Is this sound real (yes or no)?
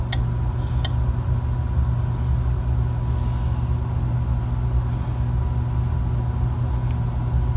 yes